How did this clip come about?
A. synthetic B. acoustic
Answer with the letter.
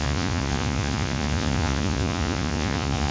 A